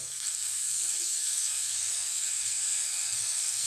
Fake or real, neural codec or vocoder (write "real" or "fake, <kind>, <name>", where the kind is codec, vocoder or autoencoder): fake, codec, SNAC